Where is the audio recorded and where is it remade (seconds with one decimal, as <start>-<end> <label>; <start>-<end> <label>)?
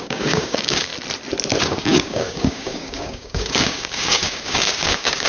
0.0-0.9 remade; 0.9-1.6 recorded; 1.6-5.3 remade